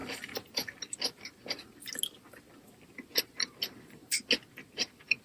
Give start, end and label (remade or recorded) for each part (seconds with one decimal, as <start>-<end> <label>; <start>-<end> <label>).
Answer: 0.0-5.2 recorded